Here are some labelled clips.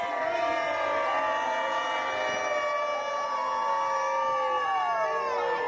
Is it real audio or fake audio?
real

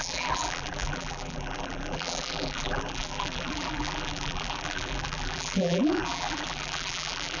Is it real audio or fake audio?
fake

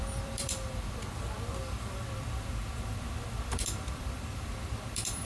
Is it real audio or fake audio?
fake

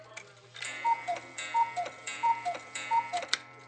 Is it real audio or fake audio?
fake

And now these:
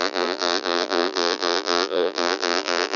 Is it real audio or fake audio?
fake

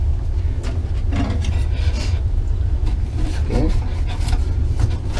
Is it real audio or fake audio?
real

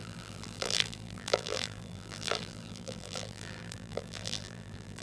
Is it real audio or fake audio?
fake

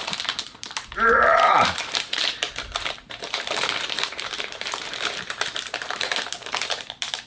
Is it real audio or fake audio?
fake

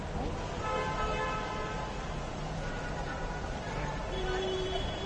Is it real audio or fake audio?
fake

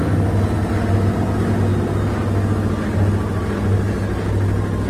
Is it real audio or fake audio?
real